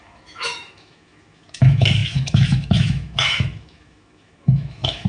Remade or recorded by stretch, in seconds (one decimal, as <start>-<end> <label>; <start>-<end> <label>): 0.0-5.1 remade